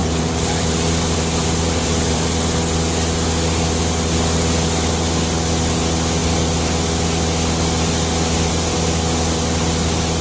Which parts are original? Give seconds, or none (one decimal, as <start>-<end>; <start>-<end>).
2.2-10.2

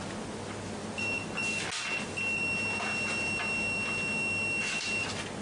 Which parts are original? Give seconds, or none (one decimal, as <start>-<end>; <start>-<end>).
0.0-5.4

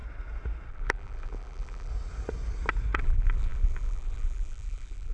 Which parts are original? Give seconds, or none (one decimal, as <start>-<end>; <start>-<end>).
0.0-0.7; 1.9-3.0

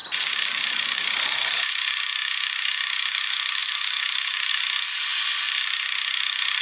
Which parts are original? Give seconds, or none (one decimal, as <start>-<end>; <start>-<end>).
2.0-3.6; 4.5-6.6

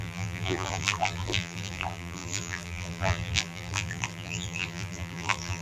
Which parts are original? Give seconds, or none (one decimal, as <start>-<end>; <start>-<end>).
none

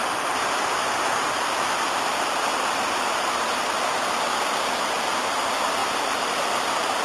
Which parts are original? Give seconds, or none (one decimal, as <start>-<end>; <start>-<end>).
1.2-2.5; 3.7-5.8

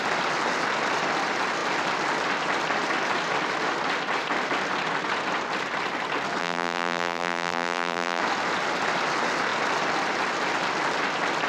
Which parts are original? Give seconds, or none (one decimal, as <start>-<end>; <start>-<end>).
0.0-6.4; 8.2-11.5

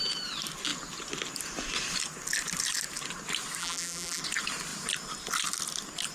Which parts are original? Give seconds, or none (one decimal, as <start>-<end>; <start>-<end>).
0.0-3.6; 4.2-6.1